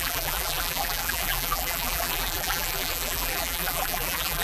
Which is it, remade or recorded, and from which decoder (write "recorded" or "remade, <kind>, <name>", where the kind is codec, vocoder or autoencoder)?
remade, vocoder, BigVGAN v2